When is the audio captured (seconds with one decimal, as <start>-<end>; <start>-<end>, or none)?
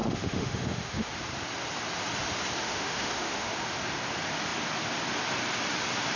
1.1-2.6; 3.5-6.2